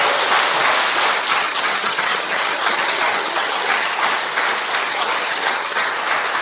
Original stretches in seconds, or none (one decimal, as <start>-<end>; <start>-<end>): 0.0-1.3; 3.9-4.9; 5.9-6.4